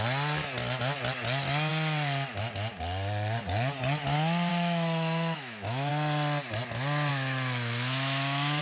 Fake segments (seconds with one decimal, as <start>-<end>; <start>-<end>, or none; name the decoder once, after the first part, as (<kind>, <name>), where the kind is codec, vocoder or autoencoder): 4.5-5.9 (autoencoder, DAC-VAE); 7.1-8.6